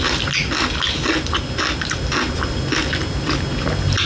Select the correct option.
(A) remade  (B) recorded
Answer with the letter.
B